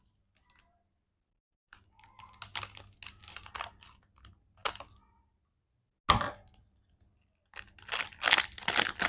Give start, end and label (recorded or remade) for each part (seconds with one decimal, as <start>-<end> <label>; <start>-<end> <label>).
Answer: 0.0-9.1 recorded